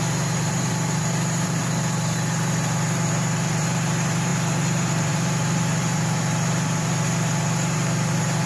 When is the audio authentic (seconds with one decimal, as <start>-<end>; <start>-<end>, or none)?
none